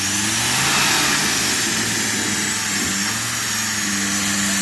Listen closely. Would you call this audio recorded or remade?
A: recorded